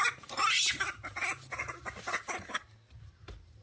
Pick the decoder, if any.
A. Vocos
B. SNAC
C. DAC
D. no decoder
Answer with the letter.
D